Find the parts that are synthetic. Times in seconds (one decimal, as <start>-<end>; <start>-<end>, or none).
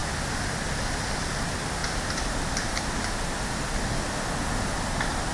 none